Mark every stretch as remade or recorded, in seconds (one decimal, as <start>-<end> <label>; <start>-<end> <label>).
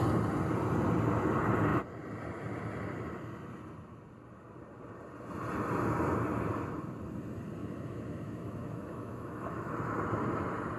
0.0-7.6 recorded; 7.6-9.7 remade; 9.7-10.8 recorded